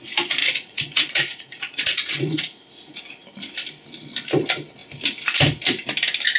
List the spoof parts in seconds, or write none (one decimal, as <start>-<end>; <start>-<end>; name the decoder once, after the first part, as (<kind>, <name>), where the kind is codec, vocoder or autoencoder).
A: 0.4-3.0 (vocoder, Vocos)